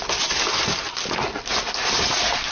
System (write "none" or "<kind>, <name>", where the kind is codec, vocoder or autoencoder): none